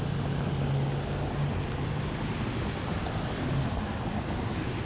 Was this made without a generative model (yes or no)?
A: yes